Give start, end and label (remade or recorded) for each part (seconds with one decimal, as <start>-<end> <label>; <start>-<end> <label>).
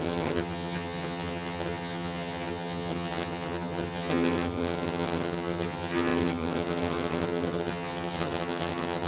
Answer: 0.0-9.1 remade